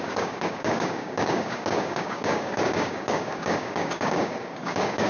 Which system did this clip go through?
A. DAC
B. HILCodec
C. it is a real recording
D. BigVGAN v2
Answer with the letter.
A